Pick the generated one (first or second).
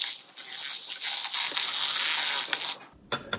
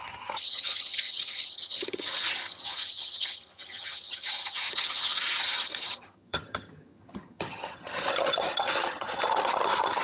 second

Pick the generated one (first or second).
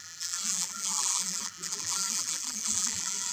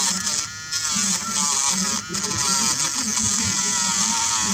first